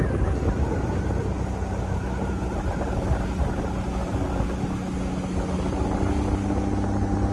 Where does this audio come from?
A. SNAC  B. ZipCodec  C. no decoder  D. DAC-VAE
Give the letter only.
C